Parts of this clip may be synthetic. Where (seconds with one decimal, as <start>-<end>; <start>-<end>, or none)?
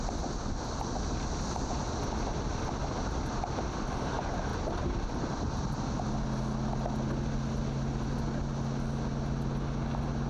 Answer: 4.5-5.4